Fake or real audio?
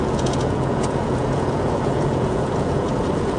fake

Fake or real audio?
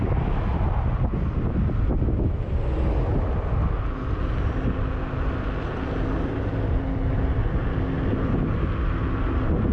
real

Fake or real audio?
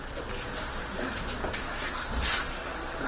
real